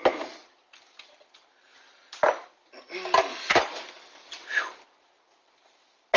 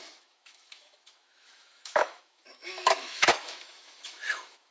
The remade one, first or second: second